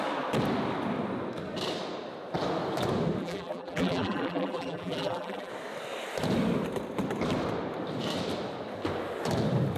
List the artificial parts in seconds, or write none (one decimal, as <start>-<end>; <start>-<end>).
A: 3.2-5.5